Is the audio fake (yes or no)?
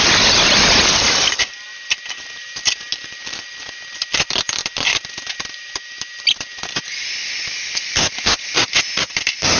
yes